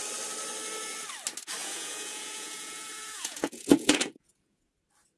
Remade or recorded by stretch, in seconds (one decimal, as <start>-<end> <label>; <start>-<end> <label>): 0.0-1.6 recorded; 1.6-4.7 remade; 4.7-5.2 recorded